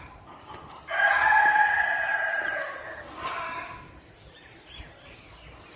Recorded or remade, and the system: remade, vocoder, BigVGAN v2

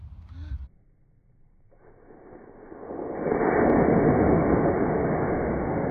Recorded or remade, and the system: recorded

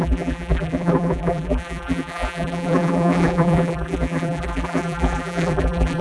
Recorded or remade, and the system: remade, vocoder, BigVGAN v2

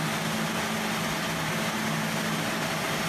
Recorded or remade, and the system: recorded